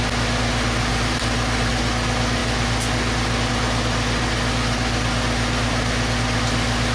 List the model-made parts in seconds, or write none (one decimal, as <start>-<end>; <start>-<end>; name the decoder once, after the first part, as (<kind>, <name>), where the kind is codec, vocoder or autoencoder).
0.9-1.7 (vocoder, BigVGAN v2)